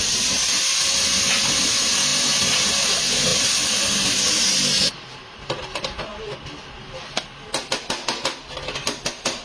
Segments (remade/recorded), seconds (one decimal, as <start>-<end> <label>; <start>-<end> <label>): 0.0-2.1 recorded; 2.1-2.7 remade; 2.7-3.3 recorded; 3.3-5.4 remade; 5.4-9.4 recorded